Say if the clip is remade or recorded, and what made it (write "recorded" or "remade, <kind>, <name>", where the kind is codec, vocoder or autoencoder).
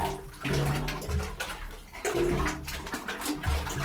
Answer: recorded